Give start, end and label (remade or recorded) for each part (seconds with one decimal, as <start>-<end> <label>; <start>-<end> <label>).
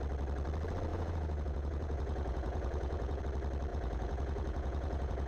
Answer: 0.0-0.9 recorded; 0.9-3.2 remade; 3.2-3.7 recorded; 3.7-5.3 remade